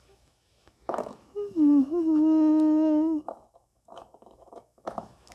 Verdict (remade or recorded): remade